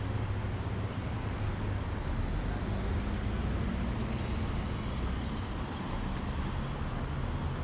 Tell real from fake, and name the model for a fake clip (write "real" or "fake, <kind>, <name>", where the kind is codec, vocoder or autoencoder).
real